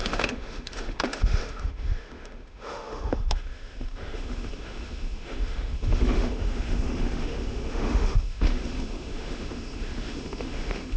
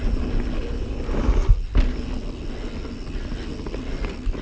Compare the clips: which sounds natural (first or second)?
second